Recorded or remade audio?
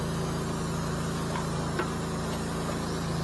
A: recorded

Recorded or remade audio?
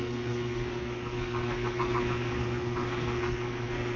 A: remade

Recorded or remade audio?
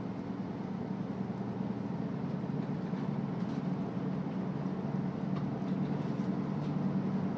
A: recorded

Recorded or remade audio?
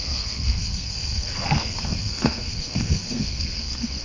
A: remade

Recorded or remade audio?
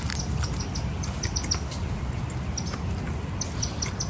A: recorded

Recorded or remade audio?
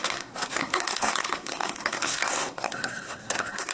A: remade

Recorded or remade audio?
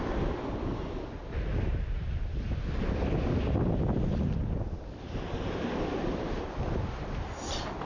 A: recorded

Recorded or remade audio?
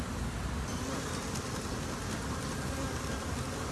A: recorded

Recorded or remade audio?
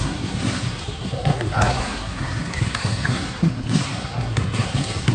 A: remade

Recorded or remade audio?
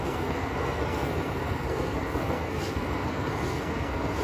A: remade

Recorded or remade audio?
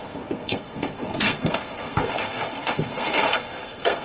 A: remade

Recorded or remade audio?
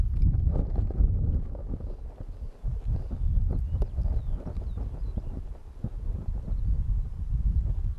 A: recorded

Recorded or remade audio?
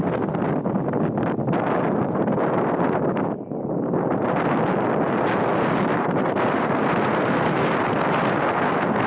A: recorded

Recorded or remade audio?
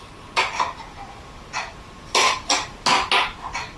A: recorded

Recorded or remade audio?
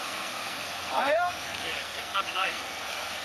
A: remade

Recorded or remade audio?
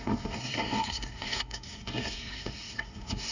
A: remade